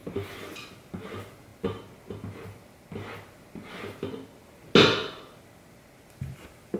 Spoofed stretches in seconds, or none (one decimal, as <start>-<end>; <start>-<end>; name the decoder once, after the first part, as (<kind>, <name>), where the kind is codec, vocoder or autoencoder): 0.0-0.7 (vocoder, BigVGAN v2)